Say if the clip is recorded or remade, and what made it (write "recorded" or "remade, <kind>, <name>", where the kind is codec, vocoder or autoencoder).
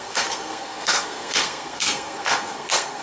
remade, codec, SNAC